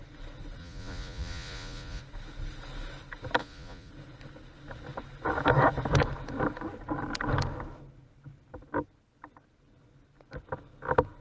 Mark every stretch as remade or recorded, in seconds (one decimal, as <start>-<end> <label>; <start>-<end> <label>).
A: 0.0-0.6 recorded; 0.6-2.0 remade; 2.0-3.4 recorded; 3.4-3.9 remade; 3.9-11.2 recorded